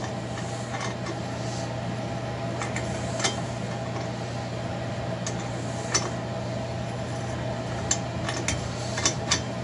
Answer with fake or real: real